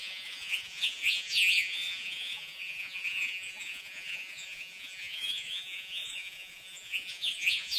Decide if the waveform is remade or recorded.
remade